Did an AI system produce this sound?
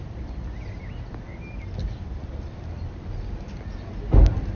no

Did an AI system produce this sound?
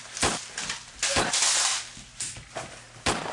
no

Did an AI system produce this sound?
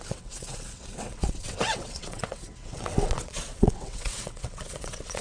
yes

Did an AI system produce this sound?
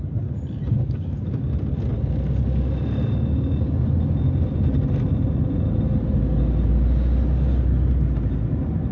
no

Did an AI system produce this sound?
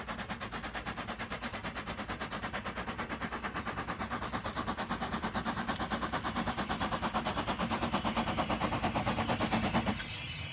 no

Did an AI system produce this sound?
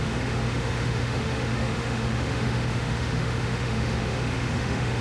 yes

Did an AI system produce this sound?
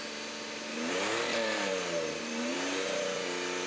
yes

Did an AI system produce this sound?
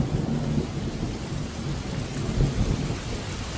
no